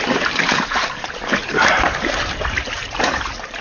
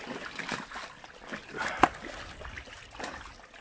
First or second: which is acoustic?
second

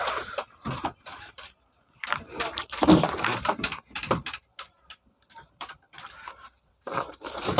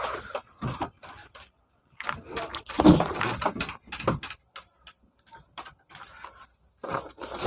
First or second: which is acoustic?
second